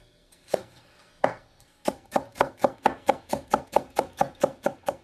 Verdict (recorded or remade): remade